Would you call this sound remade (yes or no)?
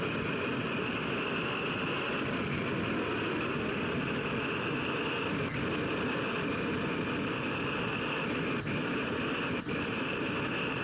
no